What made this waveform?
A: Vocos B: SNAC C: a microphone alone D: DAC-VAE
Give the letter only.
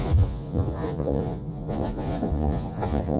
A